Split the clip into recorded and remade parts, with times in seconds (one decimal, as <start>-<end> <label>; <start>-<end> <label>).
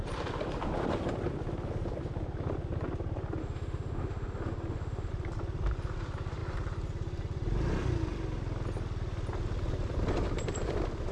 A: 0.0-3.4 recorded; 3.4-5.1 remade; 5.1-11.1 recorded